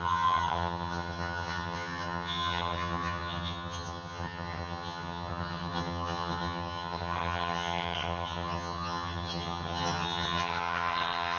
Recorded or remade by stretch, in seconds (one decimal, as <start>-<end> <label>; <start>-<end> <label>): 0.0-11.4 remade